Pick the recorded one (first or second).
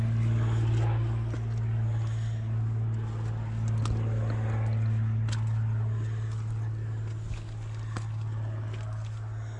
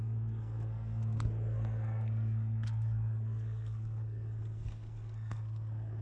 first